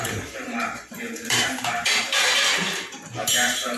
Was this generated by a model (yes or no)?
yes